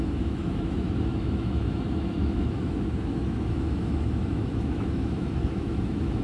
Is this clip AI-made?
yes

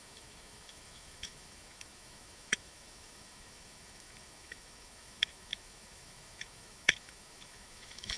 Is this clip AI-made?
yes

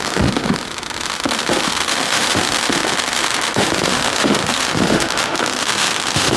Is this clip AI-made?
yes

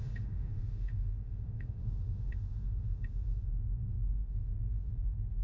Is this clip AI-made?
yes